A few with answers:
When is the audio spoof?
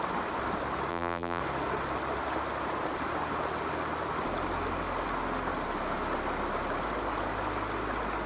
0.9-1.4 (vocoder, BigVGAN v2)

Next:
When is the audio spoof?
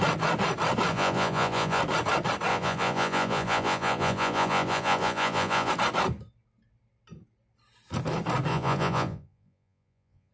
0.9-1.8 (vocoder, Vocos); 2.5-5.7; 8.5-10.3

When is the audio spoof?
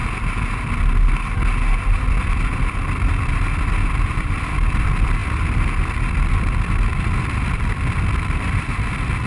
2.1-9.3 (vocoder, BigVGAN v2)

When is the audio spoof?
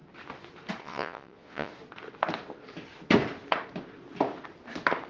0.8-1.7 (vocoder, Vocos)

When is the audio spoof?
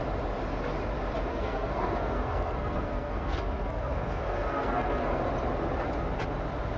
1.3-5.2 (codec, SNAC)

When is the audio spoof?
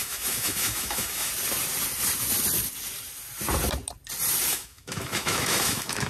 0.0-1.3 (autoencoder, DAC-VAE); 4.5-6.1